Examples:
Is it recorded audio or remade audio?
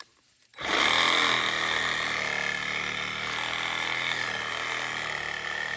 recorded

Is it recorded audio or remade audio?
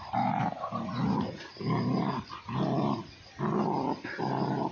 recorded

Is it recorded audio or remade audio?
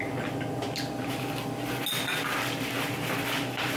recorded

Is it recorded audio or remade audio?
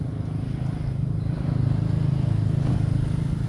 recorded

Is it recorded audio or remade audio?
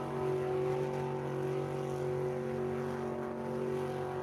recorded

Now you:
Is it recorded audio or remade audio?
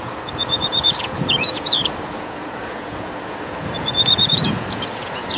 remade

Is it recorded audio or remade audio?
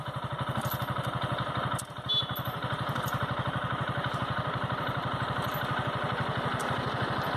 recorded